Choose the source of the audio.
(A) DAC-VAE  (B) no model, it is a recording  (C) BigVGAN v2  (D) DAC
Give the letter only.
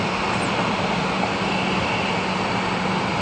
B